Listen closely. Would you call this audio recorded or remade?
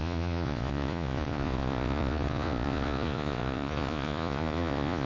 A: remade